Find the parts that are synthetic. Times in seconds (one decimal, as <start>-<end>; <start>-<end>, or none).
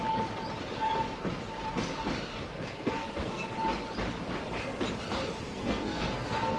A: 2.6-3.5; 5.5-6.6